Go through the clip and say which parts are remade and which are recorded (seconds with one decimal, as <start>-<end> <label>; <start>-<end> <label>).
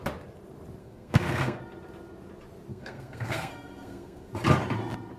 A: 0.0-0.8 recorded; 0.8-1.6 remade; 1.6-2.7 recorded; 2.7-4.3 remade; 4.3-5.2 recorded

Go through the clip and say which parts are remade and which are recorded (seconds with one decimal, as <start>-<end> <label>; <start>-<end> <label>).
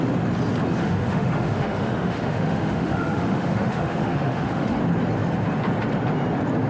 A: 0.0-0.8 recorded; 0.8-4.8 remade; 4.8-6.7 recorded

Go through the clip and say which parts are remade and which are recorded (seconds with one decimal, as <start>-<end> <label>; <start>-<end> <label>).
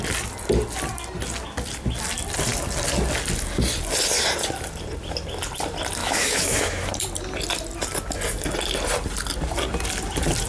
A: 0.0-6.0 recorded; 6.0-6.9 remade; 6.9-10.5 recorded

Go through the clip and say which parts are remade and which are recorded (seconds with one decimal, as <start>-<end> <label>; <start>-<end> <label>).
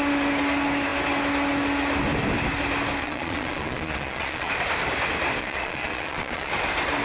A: 0.0-3.0 recorded; 3.0-4.5 remade; 4.5-5.4 recorded; 5.4-6.5 remade; 6.5-7.0 recorded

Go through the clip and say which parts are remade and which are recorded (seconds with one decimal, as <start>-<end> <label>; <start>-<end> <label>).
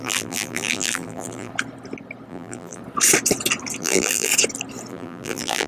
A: 0.0-1.5 remade; 1.5-2.3 recorded; 2.3-2.8 remade; 2.8-3.8 recorded; 3.8-4.3 remade; 4.3-4.9 recorded; 4.9-5.7 remade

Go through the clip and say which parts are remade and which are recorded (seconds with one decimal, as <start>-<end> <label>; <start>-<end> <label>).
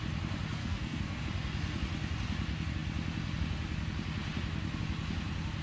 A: 0.0-0.6 recorded; 0.6-1.2 remade; 1.2-5.6 recorded